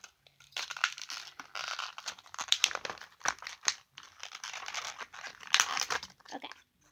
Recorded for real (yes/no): no